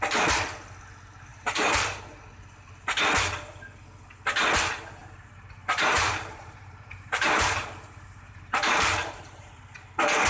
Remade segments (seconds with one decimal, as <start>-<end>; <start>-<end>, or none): 1.3-2.0; 5.0-9.6